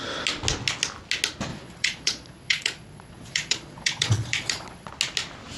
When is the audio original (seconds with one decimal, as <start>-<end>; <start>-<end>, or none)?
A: 0.0-1.5; 4.9-5.6